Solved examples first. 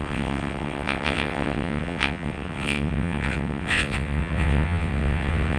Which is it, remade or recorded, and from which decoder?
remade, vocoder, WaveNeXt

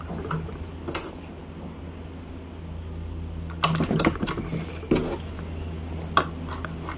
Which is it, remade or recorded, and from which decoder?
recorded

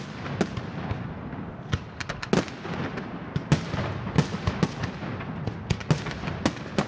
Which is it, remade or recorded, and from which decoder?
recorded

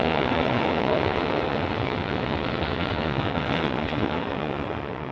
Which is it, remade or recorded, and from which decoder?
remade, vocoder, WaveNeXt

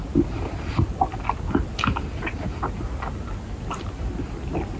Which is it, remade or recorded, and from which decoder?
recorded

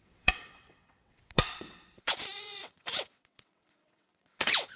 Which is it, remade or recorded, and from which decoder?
remade, vocoder, WaveNeXt